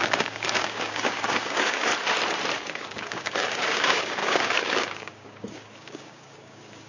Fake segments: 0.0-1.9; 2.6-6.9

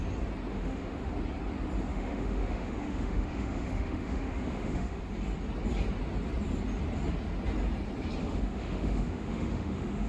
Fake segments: 0.5-1.1; 1.9-5.0; 8.2-10.1

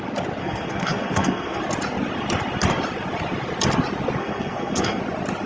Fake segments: 0.4-1.6; 4.2-5.0

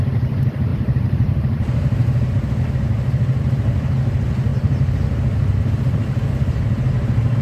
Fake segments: 0.7-2.3

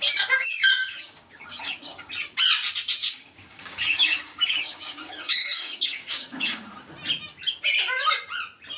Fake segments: 0.8-2.1; 3.0-6.7

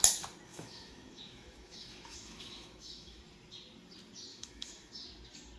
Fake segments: 0.5-3.2; 4.3-4.9

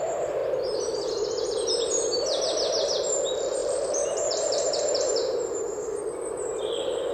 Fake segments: 3.6-6.0

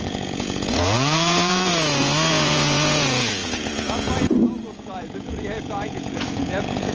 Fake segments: 0.0-1.7; 2.3-6.9